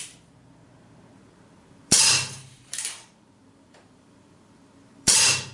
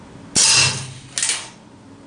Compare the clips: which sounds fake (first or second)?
first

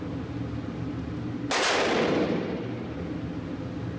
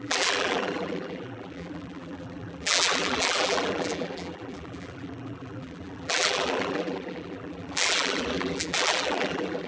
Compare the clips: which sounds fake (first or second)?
second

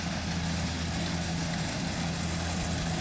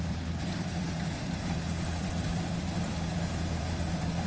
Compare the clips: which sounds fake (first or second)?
second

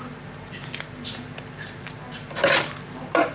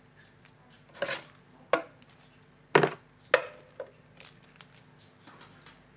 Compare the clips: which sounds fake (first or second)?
first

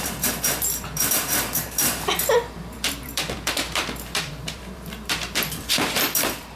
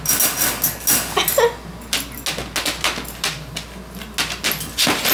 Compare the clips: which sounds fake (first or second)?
first